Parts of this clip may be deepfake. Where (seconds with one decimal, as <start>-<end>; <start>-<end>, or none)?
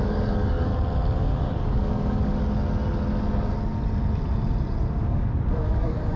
0.0-0.7; 1.2-2.3; 5.0-6.2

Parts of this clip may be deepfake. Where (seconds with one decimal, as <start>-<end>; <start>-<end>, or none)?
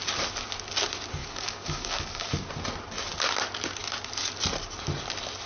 1.2-2.5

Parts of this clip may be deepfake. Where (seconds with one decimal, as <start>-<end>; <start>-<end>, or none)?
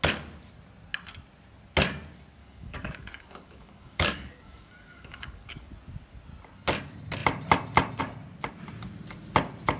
2.4-5.7